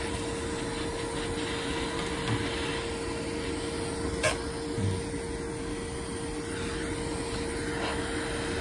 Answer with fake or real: real